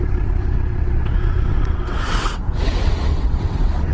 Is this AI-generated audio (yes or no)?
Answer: yes